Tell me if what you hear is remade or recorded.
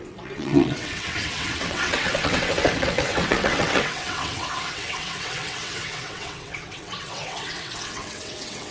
remade